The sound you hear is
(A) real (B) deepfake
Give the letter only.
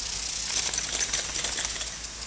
A